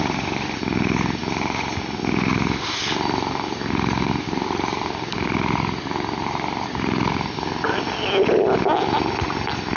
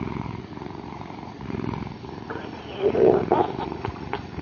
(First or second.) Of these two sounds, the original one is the first